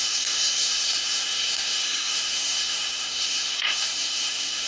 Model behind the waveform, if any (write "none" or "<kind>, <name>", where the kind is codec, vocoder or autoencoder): codec, SNAC